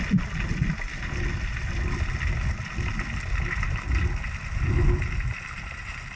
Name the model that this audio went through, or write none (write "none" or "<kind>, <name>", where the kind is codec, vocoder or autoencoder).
none